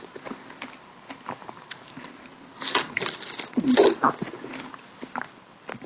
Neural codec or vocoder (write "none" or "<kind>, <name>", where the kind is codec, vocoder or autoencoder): none